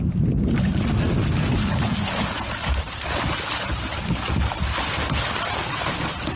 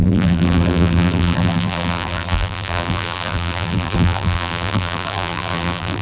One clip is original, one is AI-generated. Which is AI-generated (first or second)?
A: second